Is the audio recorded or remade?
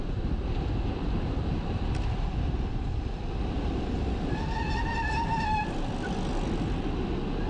recorded